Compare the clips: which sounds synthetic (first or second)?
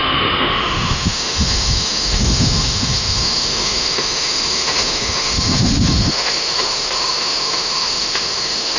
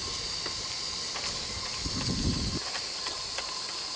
first